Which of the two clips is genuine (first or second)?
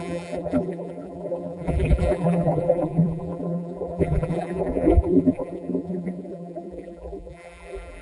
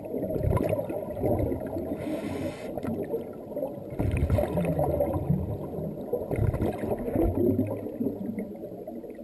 second